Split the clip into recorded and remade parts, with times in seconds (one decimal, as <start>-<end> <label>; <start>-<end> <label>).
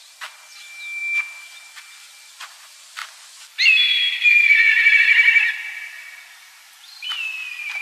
0.0-7.8 recorded